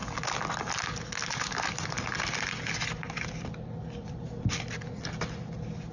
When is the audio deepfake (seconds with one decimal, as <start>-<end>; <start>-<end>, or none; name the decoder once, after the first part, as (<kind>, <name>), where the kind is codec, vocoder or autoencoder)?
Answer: none